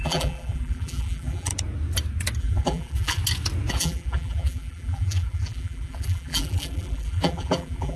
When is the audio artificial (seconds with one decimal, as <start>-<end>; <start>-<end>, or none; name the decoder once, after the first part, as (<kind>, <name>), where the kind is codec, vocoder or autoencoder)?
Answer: 0.0-1.5 (vocoder, BigVGAN v2); 2.4-3.2; 3.7-8.0